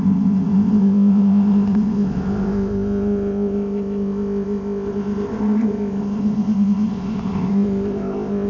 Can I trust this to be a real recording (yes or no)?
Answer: no